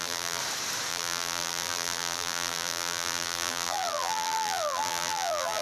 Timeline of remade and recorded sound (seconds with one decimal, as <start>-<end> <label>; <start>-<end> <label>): 0.0-0.4 remade; 0.4-0.9 recorded; 0.9-5.6 remade